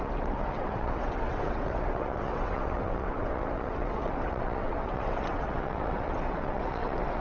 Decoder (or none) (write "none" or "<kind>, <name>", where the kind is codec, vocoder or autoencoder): vocoder, WaveNeXt